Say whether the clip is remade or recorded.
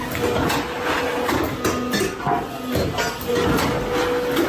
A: recorded